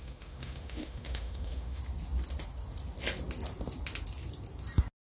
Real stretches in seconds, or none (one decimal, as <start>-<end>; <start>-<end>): 1.8-5.1